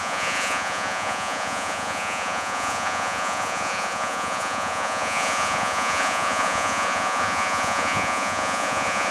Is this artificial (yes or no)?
yes